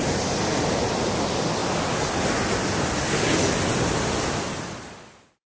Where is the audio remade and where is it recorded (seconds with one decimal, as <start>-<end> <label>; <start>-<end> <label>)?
0.0-5.5 recorded